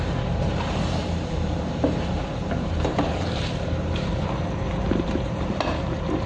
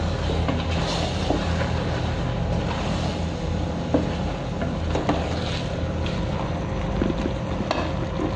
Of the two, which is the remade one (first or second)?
first